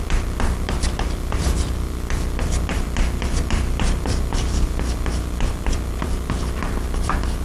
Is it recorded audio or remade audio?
remade